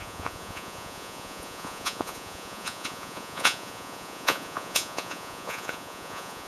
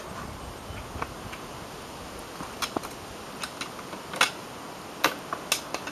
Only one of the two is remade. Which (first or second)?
first